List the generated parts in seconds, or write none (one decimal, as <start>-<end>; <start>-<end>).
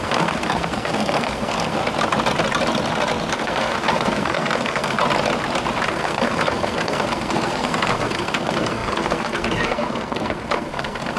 0.0-1.8; 3.3-5.0; 5.9-11.2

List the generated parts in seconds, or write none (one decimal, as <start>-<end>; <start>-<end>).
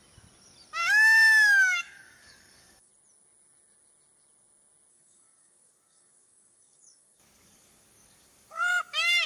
0.8-2.9; 4.9-9.3